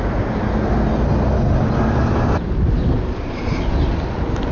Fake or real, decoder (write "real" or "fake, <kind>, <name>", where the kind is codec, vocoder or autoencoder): real